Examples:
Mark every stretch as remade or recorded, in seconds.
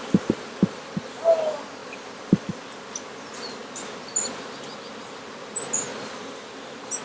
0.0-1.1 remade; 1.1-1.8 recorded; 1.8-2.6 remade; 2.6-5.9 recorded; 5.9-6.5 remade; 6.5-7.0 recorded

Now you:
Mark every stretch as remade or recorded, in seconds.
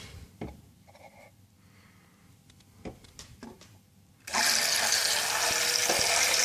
0.0-3.4 recorded; 3.4-4.0 remade; 4.0-6.4 recorded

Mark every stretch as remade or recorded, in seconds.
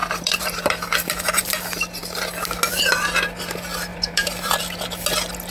0.0-1.6 remade; 1.6-3.9 recorded; 3.9-4.5 remade; 4.5-5.5 recorded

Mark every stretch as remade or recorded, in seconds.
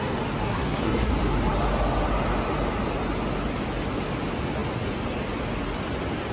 0.0-0.4 recorded; 0.4-1.1 remade; 1.1-6.3 recorded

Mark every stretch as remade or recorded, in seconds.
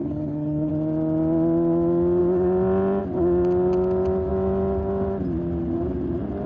0.0-0.7 remade; 0.7-6.5 recorded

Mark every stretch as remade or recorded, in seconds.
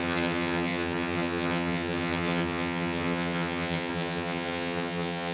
0.0-5.3 remade